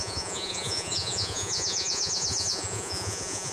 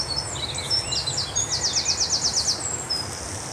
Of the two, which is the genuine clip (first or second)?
second